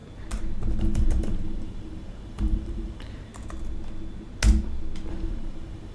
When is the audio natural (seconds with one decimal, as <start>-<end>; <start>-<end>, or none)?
0.0-0.8; 3.3-5.1